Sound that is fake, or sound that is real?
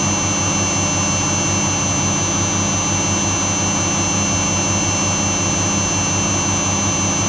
real